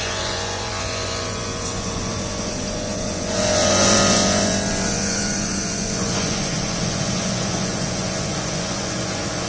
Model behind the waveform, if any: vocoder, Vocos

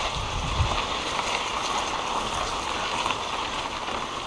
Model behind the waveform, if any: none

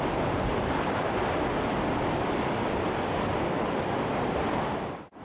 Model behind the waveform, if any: none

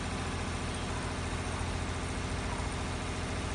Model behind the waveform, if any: none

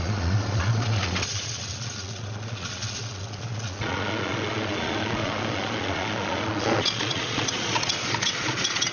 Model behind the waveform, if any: vocoder, Vocos